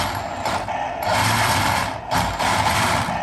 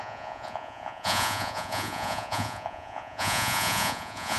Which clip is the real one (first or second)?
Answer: first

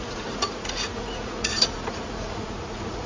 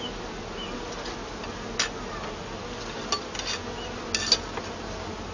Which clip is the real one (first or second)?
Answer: second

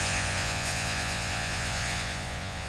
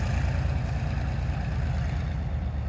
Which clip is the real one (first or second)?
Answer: second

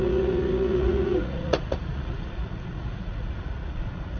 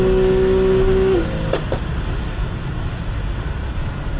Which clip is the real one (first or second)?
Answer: second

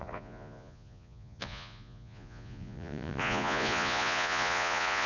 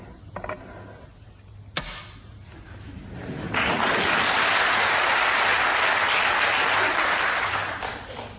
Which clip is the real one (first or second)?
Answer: second